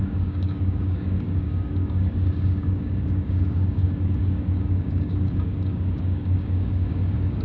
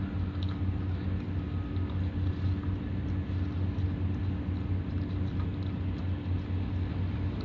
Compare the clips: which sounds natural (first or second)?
second